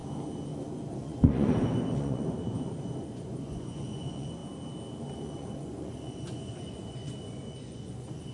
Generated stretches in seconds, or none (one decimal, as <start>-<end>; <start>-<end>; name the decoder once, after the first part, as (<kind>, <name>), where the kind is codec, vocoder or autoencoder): 0.9-4.4 (vocoder, Vocos); 5.1-8.3